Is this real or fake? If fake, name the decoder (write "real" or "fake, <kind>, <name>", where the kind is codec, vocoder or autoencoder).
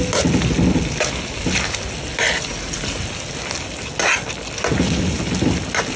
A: real